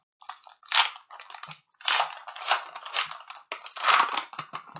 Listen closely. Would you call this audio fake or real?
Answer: real